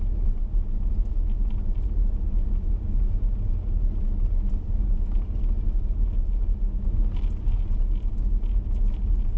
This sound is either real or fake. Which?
real